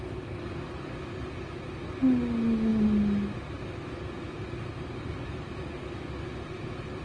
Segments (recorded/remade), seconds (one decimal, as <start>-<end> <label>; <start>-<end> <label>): 0.0-7.0 recorded